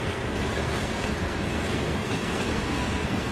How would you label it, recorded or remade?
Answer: remade